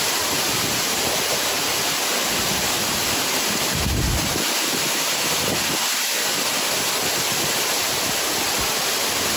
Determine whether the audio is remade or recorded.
recorded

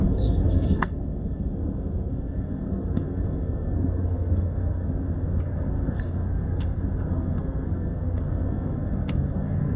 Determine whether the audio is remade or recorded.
remade